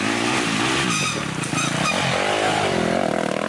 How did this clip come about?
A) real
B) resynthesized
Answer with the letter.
A